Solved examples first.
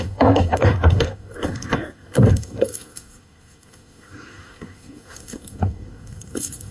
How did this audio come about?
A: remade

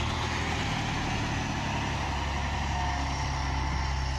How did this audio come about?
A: recorded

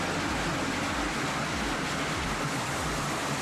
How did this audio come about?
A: recorded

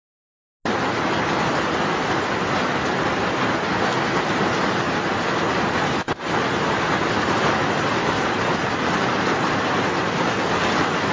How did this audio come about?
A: recorded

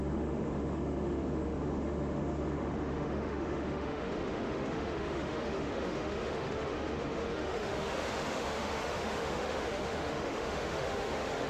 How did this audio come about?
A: remade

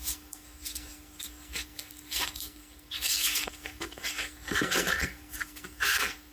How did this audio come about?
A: remade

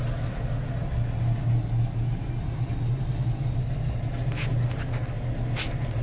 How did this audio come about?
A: recorded